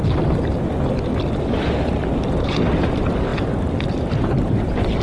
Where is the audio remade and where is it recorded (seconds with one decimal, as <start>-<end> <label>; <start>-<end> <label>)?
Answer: 0.0-5.0 recorded